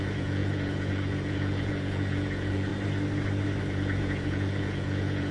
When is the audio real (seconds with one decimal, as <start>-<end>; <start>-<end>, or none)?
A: 2.7-3.6